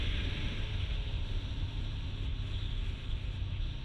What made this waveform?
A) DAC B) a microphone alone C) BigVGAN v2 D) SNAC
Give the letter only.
B